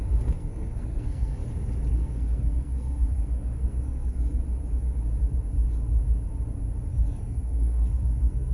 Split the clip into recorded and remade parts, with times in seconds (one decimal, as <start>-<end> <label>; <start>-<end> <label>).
0.0-1.4 remade; 1.4-1.9 recorded; 1.9-4.4 remade; 4.4-6.9 recorded; 6.9-8.5 remade